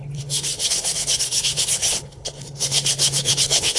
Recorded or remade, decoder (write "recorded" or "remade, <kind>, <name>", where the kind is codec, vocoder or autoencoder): remade, codec, HILCodec